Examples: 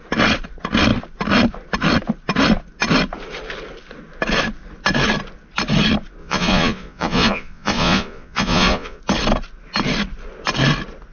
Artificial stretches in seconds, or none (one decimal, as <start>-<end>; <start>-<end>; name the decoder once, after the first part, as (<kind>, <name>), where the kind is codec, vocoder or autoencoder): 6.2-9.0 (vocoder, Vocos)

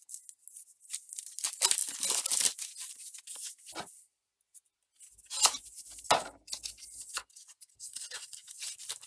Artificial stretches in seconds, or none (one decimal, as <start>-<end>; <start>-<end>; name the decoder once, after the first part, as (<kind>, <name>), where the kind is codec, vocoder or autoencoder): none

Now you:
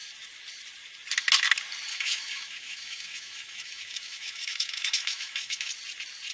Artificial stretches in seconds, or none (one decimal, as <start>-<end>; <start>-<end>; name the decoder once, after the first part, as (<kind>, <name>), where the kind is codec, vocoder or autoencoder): 1.9-5.7 (autoencoder, DAC-VAE)

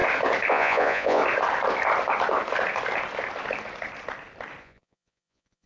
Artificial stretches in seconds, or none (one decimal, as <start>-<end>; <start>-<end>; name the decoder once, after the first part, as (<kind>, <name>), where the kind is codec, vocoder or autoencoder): 0.5-1.2 (vocoder, Vocos); 4.6-5.7

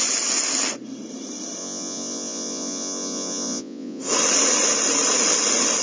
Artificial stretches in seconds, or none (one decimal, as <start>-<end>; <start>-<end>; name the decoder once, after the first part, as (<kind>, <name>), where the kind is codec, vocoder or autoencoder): 1.6-4.0 (vocoder, Vocos)